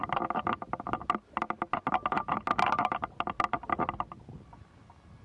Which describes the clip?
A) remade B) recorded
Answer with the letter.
B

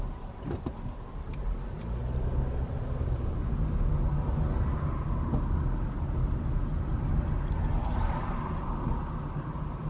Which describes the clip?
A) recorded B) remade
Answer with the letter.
A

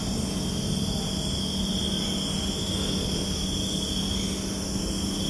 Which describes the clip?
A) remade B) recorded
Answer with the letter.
B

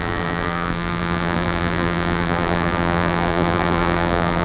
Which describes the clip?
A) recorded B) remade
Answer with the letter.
B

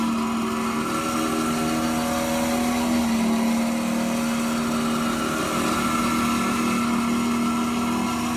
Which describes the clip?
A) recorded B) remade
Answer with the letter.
A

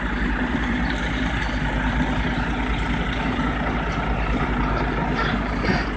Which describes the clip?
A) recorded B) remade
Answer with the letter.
B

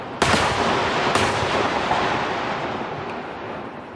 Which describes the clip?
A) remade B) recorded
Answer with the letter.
B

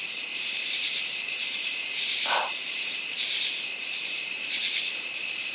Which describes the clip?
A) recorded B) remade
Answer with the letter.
B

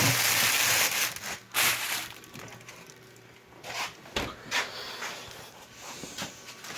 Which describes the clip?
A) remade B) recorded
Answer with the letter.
A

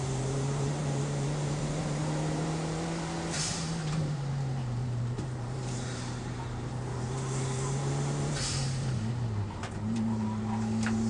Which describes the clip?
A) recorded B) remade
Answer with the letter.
B